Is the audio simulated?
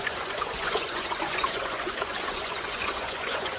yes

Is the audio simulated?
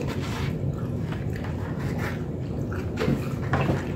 no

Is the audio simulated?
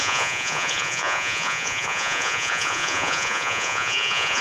yes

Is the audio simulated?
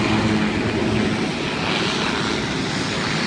no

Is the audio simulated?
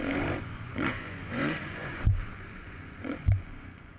yes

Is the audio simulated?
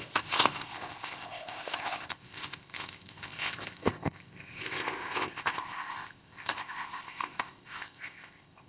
yes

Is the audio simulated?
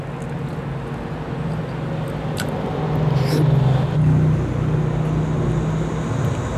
no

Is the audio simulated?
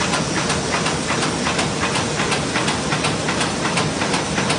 no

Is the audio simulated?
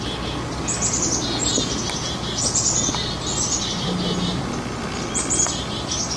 no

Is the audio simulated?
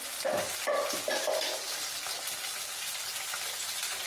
no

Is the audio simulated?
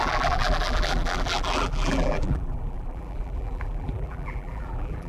yes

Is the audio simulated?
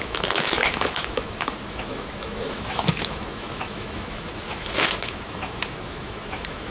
yes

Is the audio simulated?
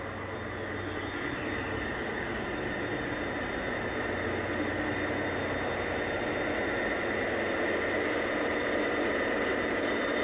no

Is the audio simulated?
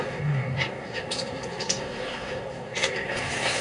yes